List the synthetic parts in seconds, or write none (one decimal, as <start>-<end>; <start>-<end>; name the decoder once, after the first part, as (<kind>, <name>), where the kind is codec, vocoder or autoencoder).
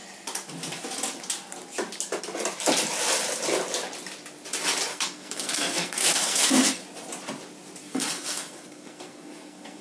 4.9-6.8 (codec, SNAC); 7.8-9.8